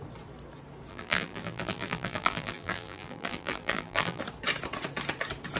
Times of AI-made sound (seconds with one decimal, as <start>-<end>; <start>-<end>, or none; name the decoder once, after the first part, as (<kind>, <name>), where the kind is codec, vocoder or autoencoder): 0.9-4.2 (vocoder, BigVGAN v2)